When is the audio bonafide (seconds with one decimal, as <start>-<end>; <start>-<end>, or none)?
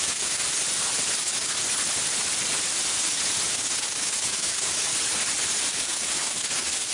0.4-1.2; 1.6-3.5; 4.9-5.7